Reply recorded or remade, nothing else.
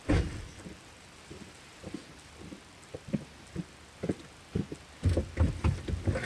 recorded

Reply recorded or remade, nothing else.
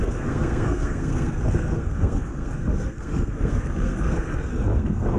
remade